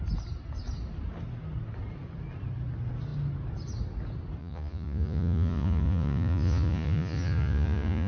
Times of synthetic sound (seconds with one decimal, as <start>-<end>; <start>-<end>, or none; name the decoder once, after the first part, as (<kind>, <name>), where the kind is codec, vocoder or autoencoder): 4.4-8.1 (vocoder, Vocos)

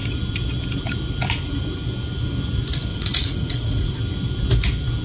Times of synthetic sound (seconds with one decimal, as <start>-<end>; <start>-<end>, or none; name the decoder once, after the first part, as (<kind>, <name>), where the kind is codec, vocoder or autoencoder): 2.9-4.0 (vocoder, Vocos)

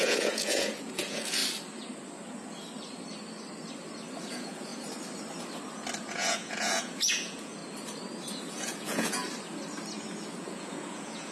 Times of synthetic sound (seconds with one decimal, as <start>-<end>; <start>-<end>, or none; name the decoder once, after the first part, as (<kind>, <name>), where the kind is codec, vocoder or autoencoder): 0.0-1.4 (vocoder, Vocos); 4.2-4.7; 6.0-7.6; 8.5-9.2; 10.4-11.3